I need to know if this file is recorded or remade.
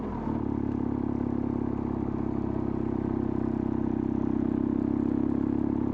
recorded